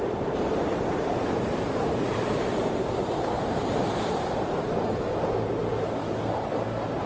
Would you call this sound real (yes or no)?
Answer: no